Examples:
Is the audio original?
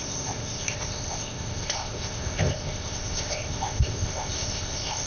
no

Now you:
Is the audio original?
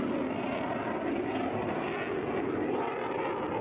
yes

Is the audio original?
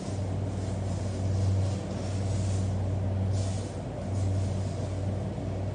yes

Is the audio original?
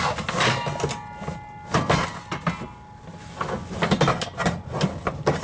yes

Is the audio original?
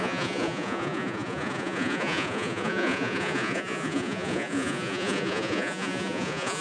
no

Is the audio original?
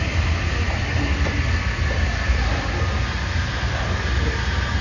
yes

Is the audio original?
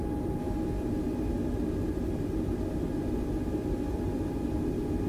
yes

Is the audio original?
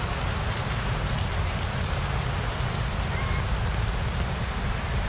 yes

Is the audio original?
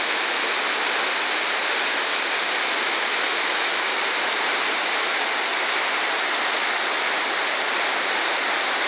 yes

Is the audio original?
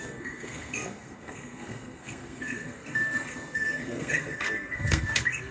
no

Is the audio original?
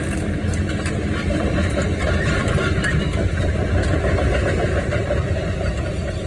no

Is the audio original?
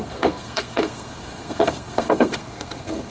no